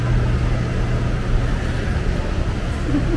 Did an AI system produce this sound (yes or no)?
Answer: no